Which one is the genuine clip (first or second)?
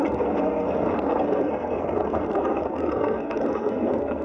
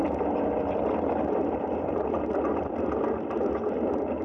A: second